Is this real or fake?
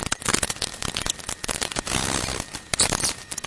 fake